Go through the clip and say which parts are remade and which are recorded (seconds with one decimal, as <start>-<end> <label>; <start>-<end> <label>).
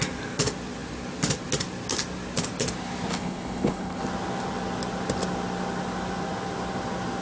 0.0-3.1 recorded; 3.1-4.0 remade; 4.0-7.2 recorded